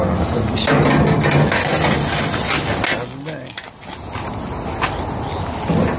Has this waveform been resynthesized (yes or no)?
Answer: no